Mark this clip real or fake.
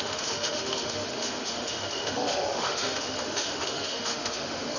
fake